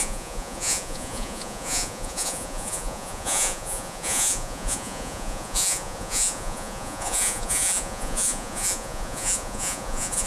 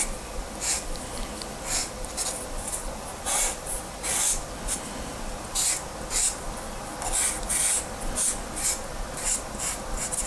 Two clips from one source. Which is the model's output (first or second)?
first